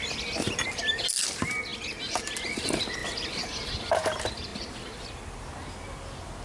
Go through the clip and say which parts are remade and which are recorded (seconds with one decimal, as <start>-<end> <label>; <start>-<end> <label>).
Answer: 0.0-6.4 recorded